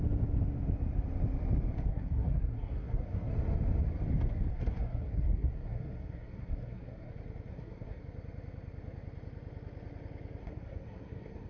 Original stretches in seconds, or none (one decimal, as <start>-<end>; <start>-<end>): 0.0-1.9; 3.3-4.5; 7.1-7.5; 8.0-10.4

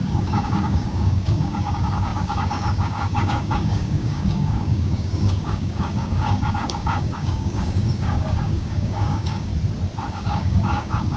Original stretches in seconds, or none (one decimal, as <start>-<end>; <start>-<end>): 9.5-10.1

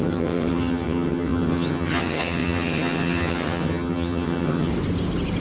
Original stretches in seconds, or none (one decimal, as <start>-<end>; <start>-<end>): 4.7-5.4